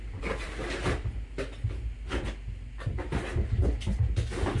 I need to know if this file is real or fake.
real